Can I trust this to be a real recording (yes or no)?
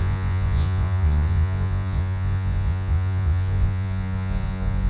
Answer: no